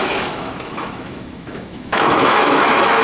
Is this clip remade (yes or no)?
yes